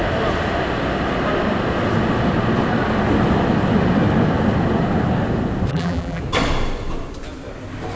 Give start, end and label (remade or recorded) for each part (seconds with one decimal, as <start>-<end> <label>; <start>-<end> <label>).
0.0-5.7 recorded; 5.7-6.2 remade; 6.2-8.0 recorded